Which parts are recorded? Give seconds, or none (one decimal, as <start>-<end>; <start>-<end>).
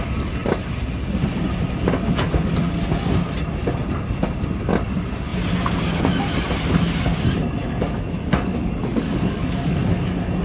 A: 0.0-7.6; 9.8-10.4